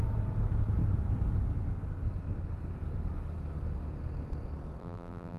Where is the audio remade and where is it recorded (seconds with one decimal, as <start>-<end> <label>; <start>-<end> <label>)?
0.0-4.8 recorded; 4.8-5.4 remade